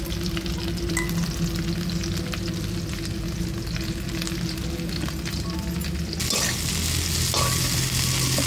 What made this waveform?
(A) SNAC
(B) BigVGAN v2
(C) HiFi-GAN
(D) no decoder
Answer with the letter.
D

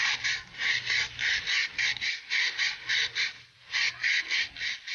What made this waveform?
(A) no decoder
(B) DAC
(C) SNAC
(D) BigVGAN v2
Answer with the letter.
A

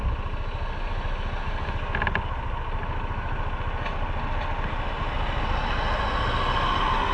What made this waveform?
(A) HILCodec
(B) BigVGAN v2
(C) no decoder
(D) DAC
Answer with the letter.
C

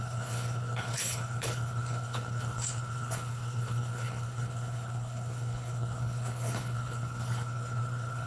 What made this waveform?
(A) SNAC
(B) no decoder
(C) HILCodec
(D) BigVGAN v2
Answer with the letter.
C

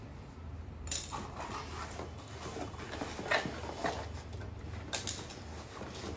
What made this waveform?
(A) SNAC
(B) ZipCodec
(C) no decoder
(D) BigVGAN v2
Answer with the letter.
C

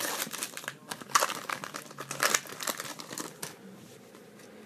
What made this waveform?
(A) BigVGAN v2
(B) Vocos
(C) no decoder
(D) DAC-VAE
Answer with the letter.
C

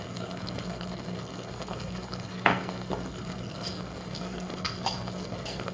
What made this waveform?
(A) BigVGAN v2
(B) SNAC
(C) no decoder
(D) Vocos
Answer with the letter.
B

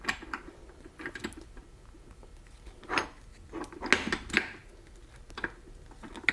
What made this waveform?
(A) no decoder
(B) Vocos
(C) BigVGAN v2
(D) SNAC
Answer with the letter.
A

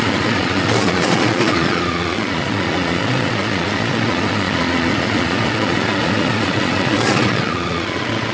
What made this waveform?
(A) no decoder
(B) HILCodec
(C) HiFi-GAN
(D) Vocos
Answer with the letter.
D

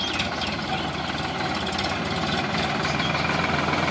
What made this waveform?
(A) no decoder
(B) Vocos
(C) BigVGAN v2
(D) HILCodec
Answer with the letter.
A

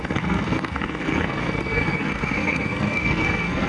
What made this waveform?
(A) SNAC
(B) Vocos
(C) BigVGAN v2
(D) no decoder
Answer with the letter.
A